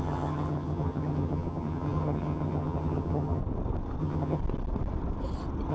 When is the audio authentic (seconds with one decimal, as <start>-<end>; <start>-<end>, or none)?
3.4-4.0; 4.4-5.7